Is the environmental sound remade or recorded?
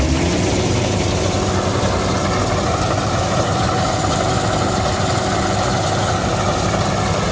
recorded